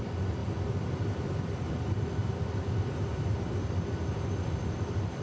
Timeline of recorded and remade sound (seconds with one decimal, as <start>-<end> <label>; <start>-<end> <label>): 0.0-0.4 remade; 0.4-3.5 recorded; 3.5-5.2 remade